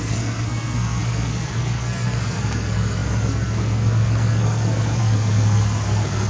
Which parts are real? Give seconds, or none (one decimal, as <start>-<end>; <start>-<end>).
none